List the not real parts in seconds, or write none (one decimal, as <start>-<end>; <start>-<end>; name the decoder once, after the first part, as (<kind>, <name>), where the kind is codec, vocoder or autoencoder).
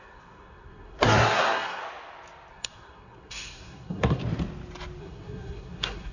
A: 0.0-1.8 (codec, SNAC); 2.5-4.2; 5.0-6.1